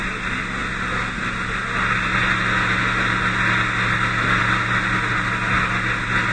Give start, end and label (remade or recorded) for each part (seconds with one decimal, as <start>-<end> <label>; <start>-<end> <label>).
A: 0.0-6.3 recorded